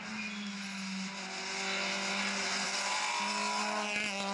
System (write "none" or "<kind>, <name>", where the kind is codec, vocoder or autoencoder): none